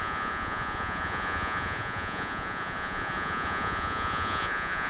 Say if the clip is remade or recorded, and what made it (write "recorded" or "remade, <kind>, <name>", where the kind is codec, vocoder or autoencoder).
remade, vocoder, Vocos